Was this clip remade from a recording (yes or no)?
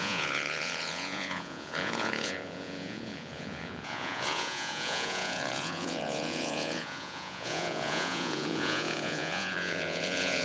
yes